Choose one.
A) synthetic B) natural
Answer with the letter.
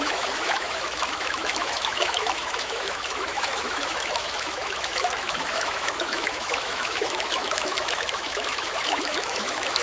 A